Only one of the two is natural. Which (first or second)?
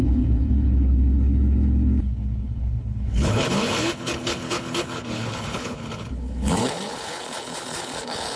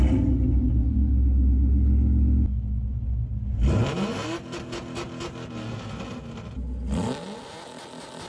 second